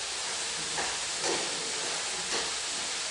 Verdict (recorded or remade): recorded